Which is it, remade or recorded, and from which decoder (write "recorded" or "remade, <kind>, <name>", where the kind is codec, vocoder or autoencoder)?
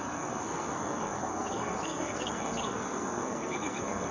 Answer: remade, codec, SNAC